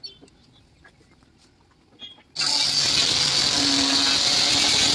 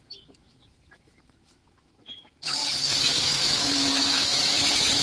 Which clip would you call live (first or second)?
first